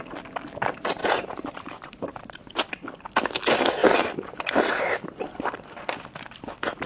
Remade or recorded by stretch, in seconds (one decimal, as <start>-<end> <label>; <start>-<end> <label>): 0.0-1.0 recorded; 1.0-2.7 remade; 2.7-3.8 recorded; 3.8-5.3 remade; 5.3-6.9 recorded